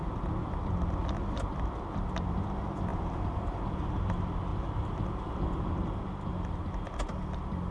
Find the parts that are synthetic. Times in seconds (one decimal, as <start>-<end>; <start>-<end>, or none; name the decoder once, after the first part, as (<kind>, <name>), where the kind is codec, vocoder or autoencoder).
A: 2.9-3.6 (vocoder, BigVGAN v2); 4.5-6.6